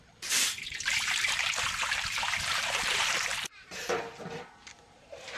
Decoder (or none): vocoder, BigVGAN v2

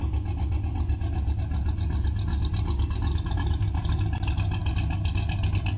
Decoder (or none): none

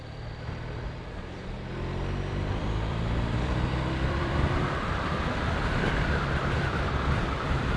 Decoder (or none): vocoder, BigVGAN v2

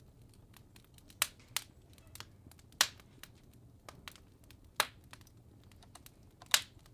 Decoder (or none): none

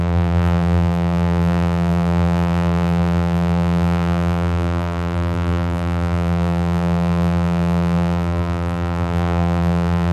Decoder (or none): vocoder, BigVGAN v2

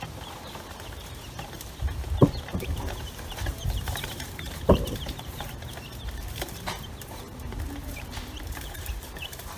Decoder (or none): vocoder, BigVGAN v2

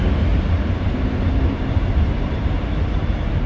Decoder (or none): vocoder, BigVGAN v2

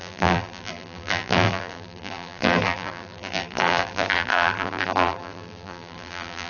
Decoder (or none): vocoder, BigVGAN v2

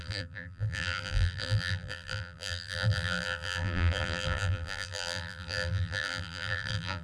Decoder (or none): vocoder, BigVGAN v2